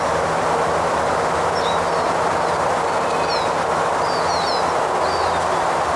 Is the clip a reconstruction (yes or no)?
no